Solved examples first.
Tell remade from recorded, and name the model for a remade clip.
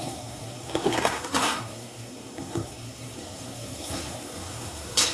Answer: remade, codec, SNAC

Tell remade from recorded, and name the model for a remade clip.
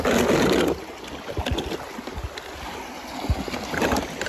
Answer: recorded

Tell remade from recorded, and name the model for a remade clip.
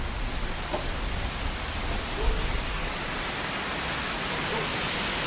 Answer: recorded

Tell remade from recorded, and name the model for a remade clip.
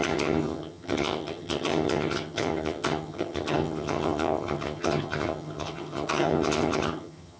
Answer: remade, vocoder, HiFi-GAN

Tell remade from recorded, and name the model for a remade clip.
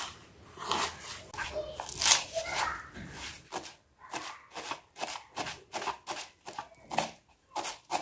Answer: recorded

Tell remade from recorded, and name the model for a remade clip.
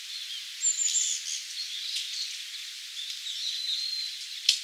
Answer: recorded